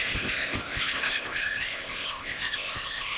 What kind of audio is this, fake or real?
fake